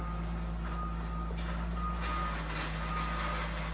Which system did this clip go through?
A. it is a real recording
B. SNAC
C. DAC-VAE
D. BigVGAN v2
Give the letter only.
A